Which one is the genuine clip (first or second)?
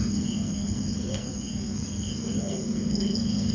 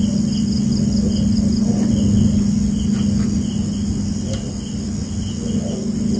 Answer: second